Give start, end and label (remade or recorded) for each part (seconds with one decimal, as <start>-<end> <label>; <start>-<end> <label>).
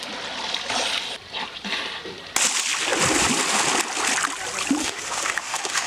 0.0-4.8 recorded; 4.8-5.9 remade